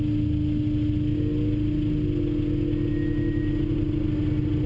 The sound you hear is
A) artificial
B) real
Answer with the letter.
B